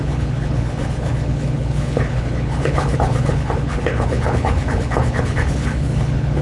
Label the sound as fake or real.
fake